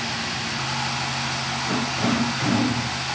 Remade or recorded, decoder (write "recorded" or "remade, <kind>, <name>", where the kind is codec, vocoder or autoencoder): recorded